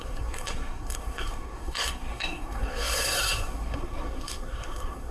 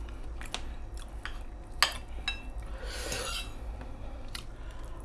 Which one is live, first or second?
second